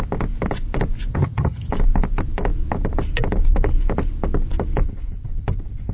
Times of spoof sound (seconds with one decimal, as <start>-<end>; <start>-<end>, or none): 1.1-1.7